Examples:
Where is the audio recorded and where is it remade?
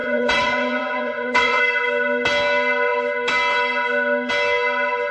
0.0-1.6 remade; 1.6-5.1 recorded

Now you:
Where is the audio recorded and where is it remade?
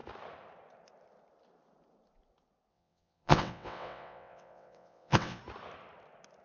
0.0-2.7 recorded; 2.7-5.4 remade; 5.4-6.4 recorded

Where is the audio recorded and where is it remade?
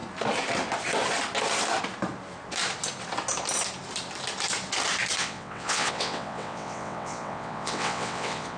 0.0-5.2 recorded; 5.2-8.6 remade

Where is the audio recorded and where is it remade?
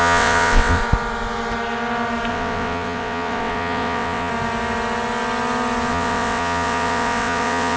0.0-0.8 remade; 0.8-2.3 recorded; 2.3-4.3 remade; 4.3-5.9 recorded; 5.9-7.8 remade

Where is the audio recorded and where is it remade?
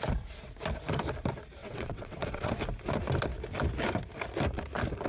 0.0-1.6 recorded; 1.6-2.5 remade; 2.5-5.1 recorded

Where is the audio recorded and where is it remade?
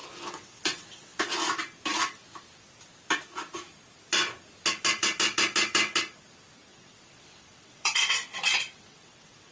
0.0-1.2 remade; 1.2-6.7 recorded; 6.7-9.5 remade